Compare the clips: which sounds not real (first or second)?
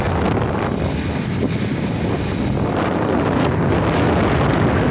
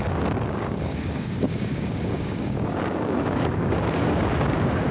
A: second